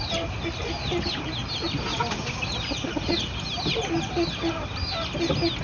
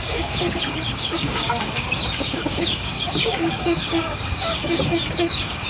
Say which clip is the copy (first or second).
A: second